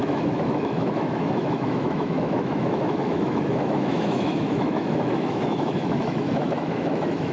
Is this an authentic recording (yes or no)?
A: no